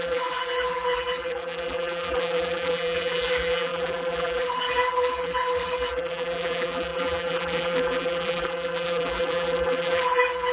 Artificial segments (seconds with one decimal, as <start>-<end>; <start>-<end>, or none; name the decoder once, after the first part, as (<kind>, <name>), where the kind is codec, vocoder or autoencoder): 0.0-10.5 (vocoder, BigVGAN v2)